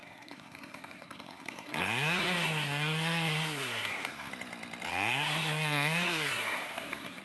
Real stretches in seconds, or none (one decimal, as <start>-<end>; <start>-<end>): 4.3-4.9